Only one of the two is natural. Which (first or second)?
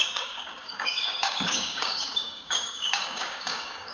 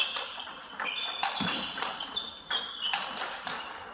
second